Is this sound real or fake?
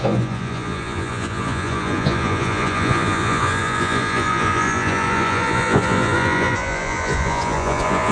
fake